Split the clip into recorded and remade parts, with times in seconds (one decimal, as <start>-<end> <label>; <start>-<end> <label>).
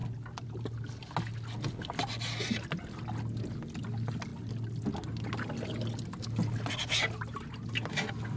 0.0-8.4 recorded